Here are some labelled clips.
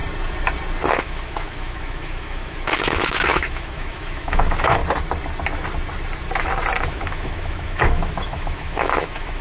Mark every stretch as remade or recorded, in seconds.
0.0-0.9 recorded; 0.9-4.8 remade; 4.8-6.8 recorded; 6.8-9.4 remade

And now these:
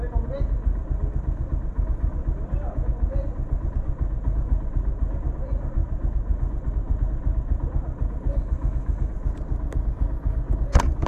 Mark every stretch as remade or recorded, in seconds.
0.0-8.4 recorded; 8.4-9.1 remade; 9.1-11.1 recorded

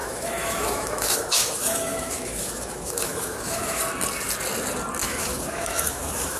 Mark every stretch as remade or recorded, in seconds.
0.0-3.8 remade; 3.8-5.0 recorded; 5.0-6.4 remade